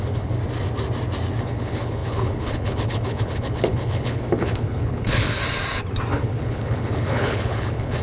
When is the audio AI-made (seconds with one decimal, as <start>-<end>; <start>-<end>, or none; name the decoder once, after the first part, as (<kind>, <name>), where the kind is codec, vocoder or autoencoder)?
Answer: 0.0-0.4 (codec, HILCodec); 1.4-5.4; 6.1-8.0